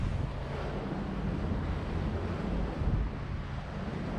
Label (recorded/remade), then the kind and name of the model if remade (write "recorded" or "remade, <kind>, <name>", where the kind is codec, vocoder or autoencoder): recorded